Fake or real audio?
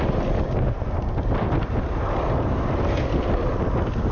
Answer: real